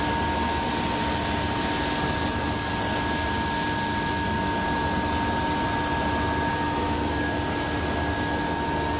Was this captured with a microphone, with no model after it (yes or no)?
yes